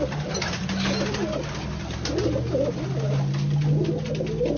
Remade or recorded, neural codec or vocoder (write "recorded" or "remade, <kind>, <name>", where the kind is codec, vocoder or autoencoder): recorded